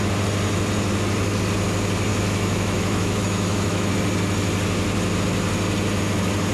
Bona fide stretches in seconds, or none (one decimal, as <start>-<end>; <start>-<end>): 0.0-2.1; 3.9-6.5